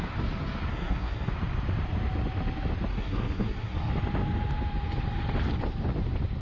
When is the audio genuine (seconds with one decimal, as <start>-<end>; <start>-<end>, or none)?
0.0-0.7; 1.3-2.9; 3.9-6.4